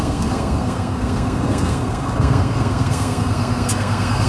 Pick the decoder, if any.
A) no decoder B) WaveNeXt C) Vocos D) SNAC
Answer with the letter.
D